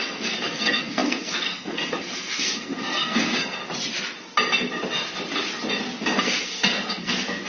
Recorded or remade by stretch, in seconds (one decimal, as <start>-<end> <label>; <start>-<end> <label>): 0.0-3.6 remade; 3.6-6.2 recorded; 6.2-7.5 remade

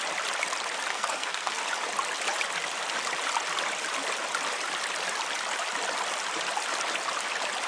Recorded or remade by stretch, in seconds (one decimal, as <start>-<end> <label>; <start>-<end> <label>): 0.0-0.9 recorded; 0.9-1.6 remade; 1.6-7.7 recorded

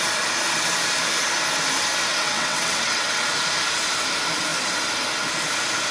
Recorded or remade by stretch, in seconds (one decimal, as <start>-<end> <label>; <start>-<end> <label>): 0.0-2.1 recorded; 2.1-3.2 remade; 3.2-5.9 recorded

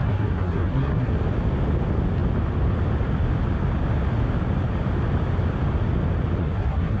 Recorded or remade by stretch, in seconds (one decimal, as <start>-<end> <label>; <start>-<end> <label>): 0.0-1.2 remade; 1.2-6.4 recorded; 6.4-7.0 remade

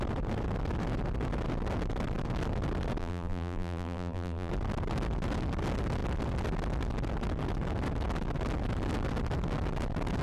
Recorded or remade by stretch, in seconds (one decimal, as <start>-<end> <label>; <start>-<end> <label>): 0.0-3.0 recorded; 3.0-4.5 remade; 4.5-10.2 recorded

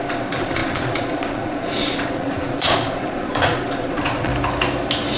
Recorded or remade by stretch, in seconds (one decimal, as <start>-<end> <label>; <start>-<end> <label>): 0.0-4.3 remade; 4.3-5.2 recorded

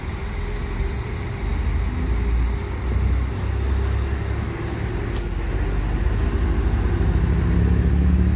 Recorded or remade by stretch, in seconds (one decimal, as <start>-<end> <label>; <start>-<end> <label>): 0.0-8.4 recorded